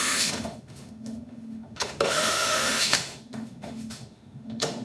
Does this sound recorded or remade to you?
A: remade